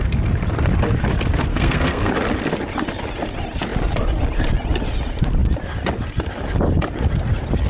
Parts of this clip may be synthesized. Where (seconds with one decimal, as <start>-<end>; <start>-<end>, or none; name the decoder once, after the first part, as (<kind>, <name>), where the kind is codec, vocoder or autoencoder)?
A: 1.5-2.1 (codec, SNAC)

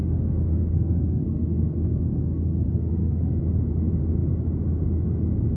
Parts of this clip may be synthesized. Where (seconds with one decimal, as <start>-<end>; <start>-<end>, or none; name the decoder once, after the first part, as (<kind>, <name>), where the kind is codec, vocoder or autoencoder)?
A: 0.0-3.4 (codec, SNAC)

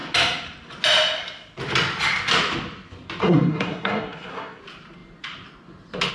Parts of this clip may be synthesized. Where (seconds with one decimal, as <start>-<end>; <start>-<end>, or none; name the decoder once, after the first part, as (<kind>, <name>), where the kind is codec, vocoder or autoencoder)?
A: 3.2-4.6 (codec, SNAC)

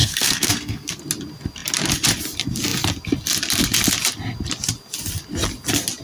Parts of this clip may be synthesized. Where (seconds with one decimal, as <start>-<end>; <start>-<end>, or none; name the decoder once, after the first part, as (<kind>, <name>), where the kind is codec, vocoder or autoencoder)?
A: 0.0-1.0 (codec, SNAC)

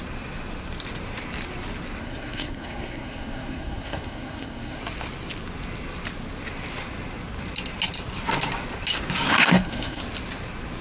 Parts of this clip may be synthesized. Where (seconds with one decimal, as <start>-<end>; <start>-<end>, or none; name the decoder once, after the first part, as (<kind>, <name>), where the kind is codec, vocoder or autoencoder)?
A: 2.0-4.8 (codec, SNAC); 9.3-10.0

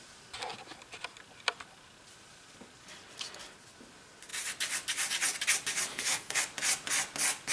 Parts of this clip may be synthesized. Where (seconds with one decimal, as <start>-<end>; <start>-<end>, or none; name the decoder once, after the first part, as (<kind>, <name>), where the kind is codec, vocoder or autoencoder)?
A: 5.9-6.4 (codec, SNAC)

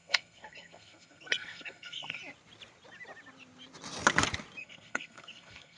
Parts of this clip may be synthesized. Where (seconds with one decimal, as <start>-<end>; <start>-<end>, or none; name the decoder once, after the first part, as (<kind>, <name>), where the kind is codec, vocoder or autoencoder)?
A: 0.0-2.2 (codec, SNAC); 4.6-5.8

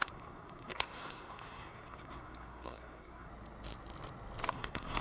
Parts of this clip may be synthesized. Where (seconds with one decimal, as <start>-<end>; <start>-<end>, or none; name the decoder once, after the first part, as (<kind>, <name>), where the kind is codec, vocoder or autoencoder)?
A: 0.0-3.3 (codec, SNAC); 4.5-5.0